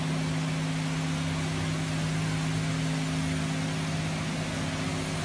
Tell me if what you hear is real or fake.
real